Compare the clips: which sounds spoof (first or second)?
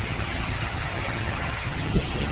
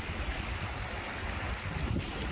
first